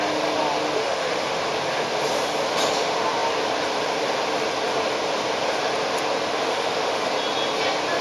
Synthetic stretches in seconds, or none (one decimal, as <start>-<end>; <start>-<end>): 0.8-1.4; 6.4-7.1